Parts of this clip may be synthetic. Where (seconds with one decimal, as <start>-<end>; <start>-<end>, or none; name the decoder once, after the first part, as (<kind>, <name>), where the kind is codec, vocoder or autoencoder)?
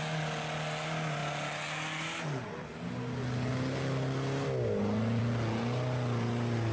none